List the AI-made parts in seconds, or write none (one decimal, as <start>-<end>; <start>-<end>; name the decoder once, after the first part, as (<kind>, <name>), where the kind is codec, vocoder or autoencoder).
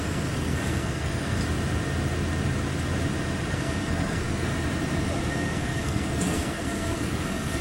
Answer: 0.0-1.4 (codec, SNAC); 3.5-4.5; 5.3-7.6